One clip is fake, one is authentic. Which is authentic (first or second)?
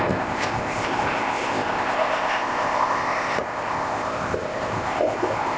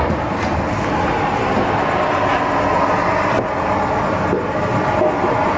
second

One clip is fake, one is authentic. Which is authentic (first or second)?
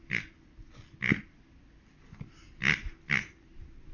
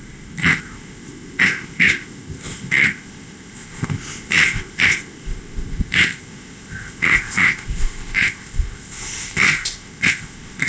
first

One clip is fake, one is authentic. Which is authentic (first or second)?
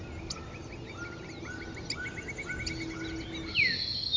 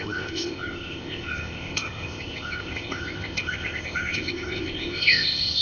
first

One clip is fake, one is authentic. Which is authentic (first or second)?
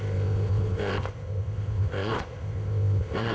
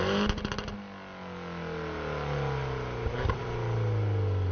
second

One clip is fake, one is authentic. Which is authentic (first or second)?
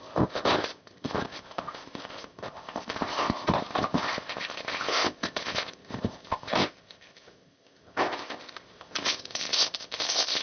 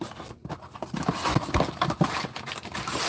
second